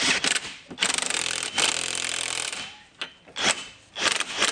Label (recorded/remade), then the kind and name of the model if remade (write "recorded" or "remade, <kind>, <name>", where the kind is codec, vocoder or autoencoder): recorded